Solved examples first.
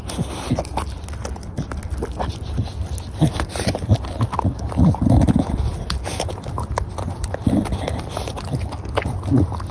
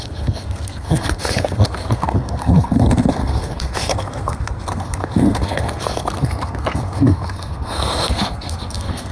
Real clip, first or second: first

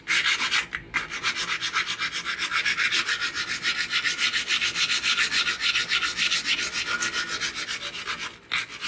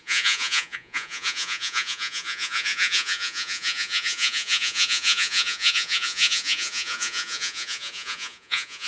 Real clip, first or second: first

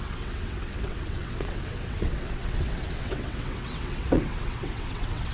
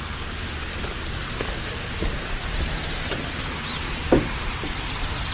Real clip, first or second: second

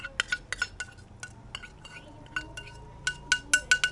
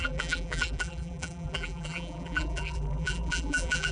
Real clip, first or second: first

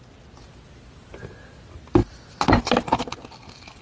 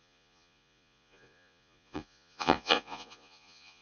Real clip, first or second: first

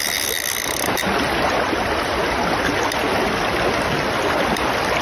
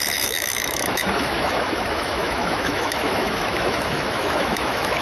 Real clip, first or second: first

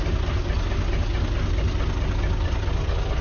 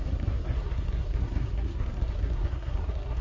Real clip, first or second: first